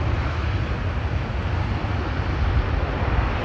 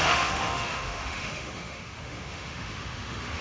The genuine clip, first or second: first